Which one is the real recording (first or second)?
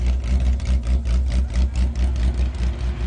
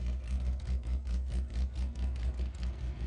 first